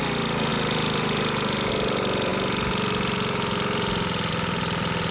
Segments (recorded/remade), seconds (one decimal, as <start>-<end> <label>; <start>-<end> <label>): 0.0-5.1 recorded